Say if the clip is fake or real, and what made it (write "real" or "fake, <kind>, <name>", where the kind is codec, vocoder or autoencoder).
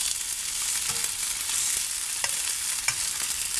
real